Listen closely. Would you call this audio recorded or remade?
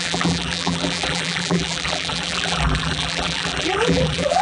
remade